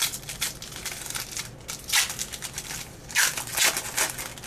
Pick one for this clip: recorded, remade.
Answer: recorded